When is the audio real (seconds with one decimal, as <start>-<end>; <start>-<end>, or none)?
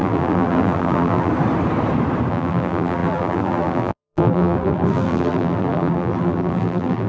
1.3-2.3